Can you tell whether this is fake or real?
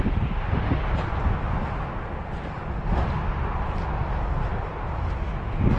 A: real